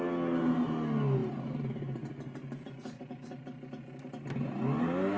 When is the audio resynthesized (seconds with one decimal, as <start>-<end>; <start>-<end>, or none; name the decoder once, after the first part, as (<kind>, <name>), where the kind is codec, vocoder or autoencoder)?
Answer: none